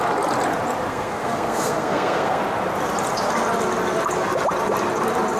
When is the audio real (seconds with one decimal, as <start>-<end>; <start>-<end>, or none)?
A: 0.0-0.9; 2.4-5.4

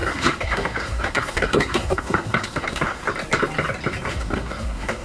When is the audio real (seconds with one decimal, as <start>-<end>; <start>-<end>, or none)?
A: 3.0-4.1

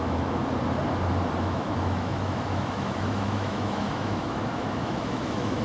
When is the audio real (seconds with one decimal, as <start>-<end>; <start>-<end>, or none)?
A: 0.4-1.4

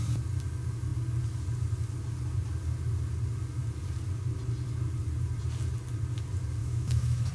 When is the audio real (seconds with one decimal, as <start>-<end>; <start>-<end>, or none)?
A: 0.0-6.6

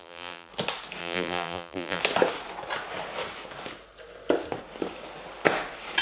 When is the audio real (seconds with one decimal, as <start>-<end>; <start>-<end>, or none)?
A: 0.5-1.0; 2.0-6.0